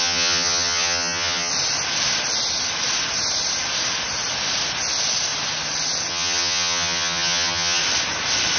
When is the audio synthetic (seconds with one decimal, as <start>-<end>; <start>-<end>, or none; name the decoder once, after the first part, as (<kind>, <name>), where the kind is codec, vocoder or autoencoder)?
0.0-1.5 (vocoder, HiFi-GAN); 6.1-7.8